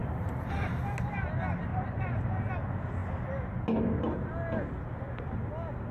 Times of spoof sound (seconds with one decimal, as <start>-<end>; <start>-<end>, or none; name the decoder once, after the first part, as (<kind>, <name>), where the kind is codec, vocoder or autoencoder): 1.7-2.5 (vocoder, BigVGAN v2)

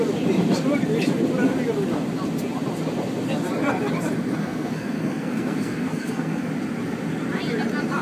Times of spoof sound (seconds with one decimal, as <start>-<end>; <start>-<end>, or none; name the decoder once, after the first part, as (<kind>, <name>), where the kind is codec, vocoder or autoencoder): 4.4-6.5 (codec, SNAC)